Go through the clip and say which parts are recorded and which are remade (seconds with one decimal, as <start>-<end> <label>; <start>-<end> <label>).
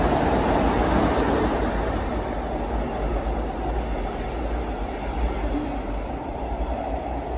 0.0-0.8 remade; 0.8-1.3 recorded; 1.3-2.1 remade; 2.1-5.2 recorded; 5.2-7.4 remade